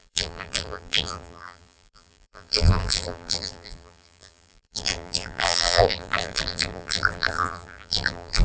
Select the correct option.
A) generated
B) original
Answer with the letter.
A